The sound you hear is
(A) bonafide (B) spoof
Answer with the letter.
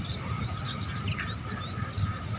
A